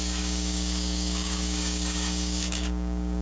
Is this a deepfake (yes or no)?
yes